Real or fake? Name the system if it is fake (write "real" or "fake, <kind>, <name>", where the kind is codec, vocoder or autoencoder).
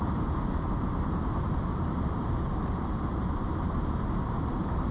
fake, vocoder, BigVGAN v2